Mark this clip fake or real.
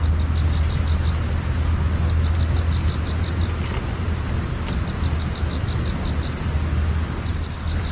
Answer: real